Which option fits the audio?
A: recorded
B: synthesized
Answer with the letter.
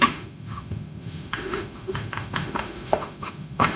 B